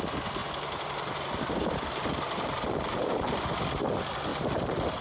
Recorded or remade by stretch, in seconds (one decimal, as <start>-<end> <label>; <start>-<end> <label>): 0.0-0.4 recorded; 0.4-3.4 remade; 3.4-4.3 recorded; 4.3-5.0 remade